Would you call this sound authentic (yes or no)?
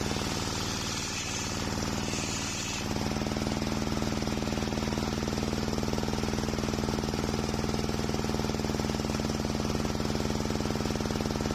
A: yes